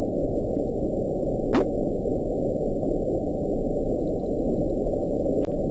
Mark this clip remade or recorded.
recorded